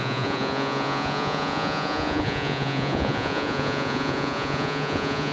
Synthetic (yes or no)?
yes